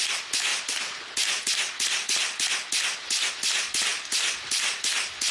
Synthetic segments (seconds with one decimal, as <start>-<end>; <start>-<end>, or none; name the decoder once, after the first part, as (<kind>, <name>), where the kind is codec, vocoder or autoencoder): none